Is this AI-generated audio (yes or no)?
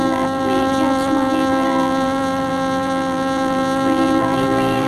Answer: yes